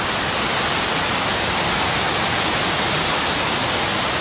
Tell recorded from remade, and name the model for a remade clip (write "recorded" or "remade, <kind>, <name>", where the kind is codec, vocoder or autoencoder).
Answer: recorded